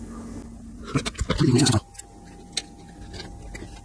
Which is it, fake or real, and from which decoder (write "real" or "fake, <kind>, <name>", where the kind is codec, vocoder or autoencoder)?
real